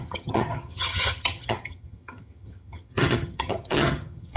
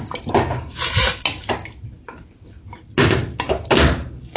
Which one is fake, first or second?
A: first